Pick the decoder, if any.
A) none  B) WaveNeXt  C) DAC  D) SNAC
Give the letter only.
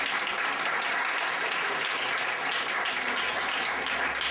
A